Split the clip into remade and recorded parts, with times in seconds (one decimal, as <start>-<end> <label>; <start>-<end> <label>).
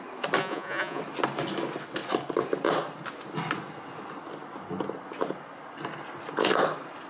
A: 0.0-0.4 recorded; 0.4-1.0 remade; 1.0-7.1 recorded